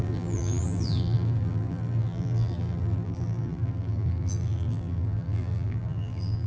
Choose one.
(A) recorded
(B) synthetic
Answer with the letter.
B